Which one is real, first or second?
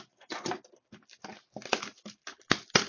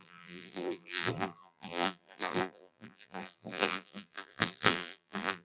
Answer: first